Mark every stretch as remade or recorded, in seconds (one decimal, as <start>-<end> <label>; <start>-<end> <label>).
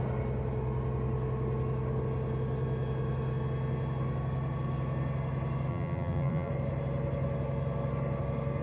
0.0-5.7 recorded; 5.7-6.5 remade; 6.5-8.6 recorded